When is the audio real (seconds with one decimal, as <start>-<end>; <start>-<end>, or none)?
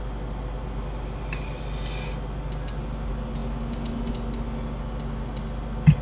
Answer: 0.0-6.0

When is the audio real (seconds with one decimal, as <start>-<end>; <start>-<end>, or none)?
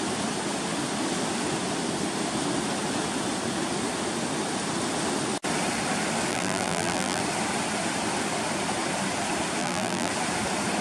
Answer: 0.0-6.3; 7.2-9.6; 10.1-10.8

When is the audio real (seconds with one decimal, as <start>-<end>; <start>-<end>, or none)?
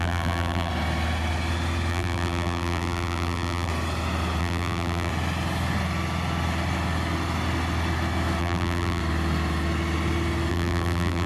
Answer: 0.7-1.9; 3.7-4.4; 5.1-8.4; 9.0-10.5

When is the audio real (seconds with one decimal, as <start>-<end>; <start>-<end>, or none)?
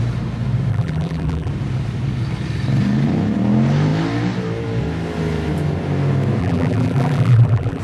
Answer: 0.0-0.7; 1.5-6.4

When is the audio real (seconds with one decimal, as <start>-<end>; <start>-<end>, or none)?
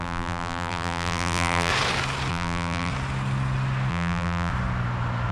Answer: 1.7-2.3; 2.9-3.9; 4.5-5.3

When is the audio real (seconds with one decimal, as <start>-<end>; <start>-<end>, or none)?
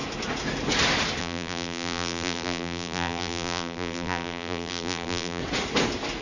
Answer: 0.0-1.2; 5.4-6.2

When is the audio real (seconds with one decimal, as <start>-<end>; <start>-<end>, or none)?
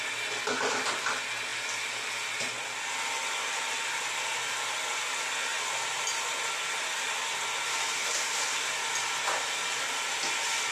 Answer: 0.0-5.5; 6.1-10.7